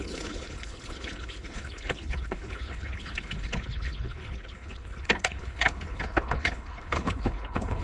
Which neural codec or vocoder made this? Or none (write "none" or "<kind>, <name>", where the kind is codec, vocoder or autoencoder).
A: codec, HILCodec